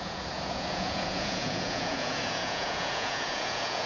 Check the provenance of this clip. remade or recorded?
remade